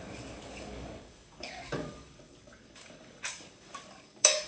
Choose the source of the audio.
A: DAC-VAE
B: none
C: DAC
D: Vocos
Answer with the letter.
C